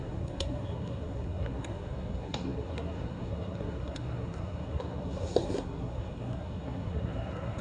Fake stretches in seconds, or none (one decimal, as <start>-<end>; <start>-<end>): 0.0-7.6